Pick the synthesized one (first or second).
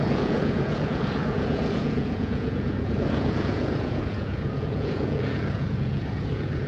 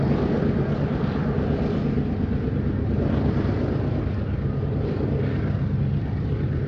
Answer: first